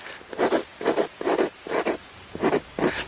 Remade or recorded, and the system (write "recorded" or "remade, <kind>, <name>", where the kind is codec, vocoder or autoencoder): recorded